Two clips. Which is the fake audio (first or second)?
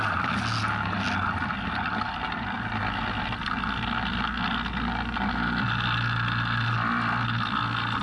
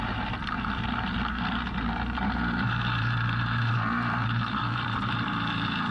second